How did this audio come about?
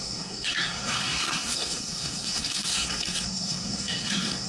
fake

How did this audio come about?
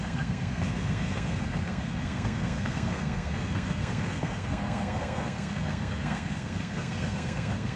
fake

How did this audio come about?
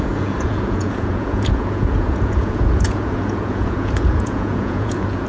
fake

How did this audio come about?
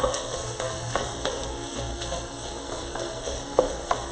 fake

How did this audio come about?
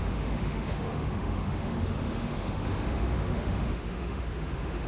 fake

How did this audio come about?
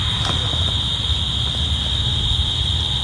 real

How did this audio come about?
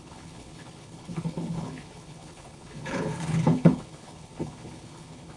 fake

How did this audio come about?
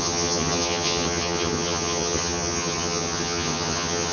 fake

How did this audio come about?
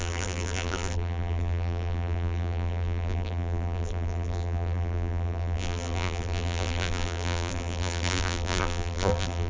fake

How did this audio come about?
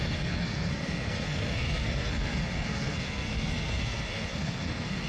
fake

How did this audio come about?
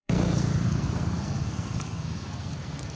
fake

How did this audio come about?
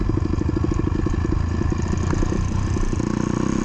real